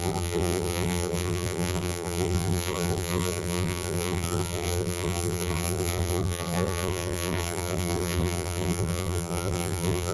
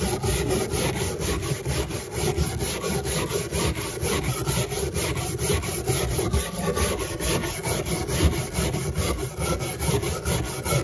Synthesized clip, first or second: first